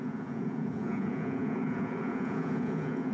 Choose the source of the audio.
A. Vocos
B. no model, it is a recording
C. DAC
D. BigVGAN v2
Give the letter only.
A